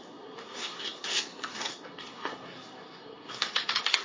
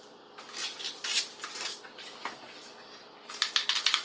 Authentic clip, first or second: second